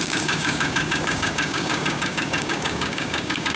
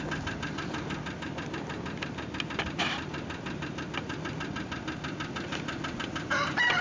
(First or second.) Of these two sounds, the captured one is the second